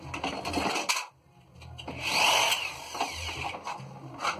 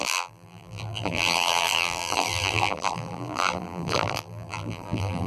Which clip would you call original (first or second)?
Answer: first